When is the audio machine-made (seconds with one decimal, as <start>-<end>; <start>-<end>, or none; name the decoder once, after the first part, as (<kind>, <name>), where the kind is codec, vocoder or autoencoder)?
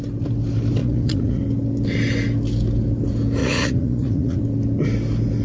0.8-1.4 (vocoder, Vocos); 3.4-4.4